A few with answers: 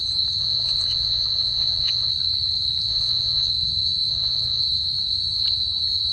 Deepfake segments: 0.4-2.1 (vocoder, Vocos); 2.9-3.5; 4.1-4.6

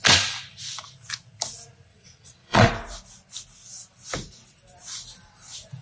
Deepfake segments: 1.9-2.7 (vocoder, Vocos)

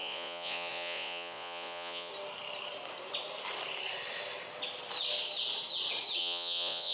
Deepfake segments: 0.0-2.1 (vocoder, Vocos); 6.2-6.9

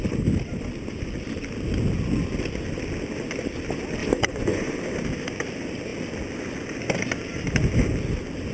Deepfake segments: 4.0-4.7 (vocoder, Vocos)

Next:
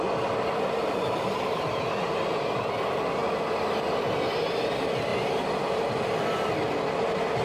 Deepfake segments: none

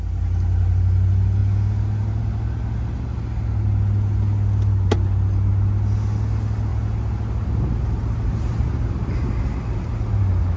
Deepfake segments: none

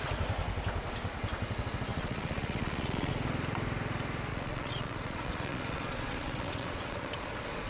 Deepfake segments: 1.9-3.1 (vocoder, Vocos); 4.3-7.7